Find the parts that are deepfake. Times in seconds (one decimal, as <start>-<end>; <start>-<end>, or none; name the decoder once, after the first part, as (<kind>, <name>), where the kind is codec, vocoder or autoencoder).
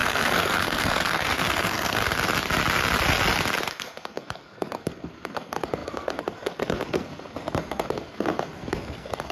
0.0-2.0 (codec, SNAC); 3.7-9.3